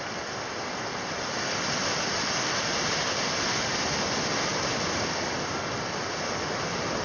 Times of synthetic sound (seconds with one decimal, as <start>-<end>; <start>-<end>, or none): none